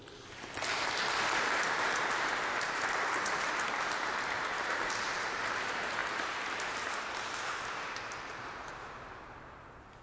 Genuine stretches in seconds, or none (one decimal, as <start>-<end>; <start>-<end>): none